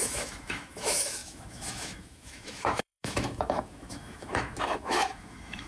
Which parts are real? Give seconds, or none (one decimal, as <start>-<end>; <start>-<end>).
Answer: none